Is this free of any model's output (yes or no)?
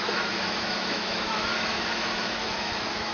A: no